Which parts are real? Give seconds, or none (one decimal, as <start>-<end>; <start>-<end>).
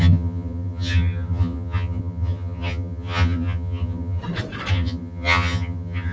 4.2-4.7